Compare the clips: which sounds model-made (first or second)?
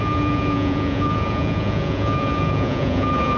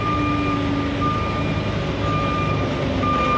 first